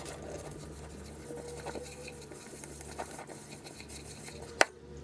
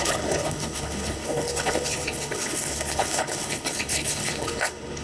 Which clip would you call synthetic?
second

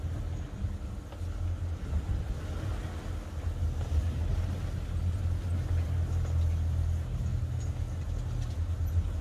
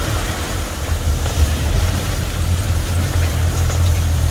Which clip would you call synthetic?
second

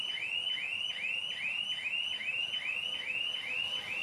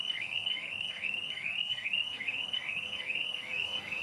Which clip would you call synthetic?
second